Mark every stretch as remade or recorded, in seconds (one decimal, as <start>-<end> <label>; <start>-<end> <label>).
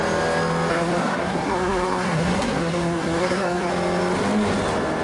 0.0-0.7 recorded; 0.7-3.7 remade; 3.7-5.0 recorded